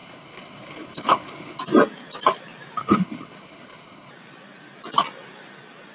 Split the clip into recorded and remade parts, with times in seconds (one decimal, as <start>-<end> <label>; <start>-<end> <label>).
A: 0.0-1.6 remade; 1.6-2.8 recorded; 2.8-4.1 remade; 4.1-5.9 recorded